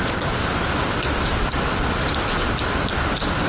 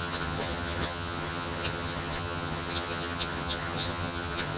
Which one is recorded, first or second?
first